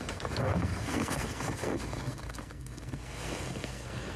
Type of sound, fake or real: fake